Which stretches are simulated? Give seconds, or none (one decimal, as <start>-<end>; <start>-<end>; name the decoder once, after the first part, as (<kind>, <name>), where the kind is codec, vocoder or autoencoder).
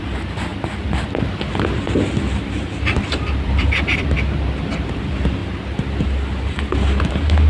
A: 0.5-5.0 (vocoder, BigVGAN v2); 5.4-7.1